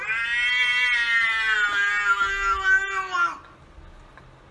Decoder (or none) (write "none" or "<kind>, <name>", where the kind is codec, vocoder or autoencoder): none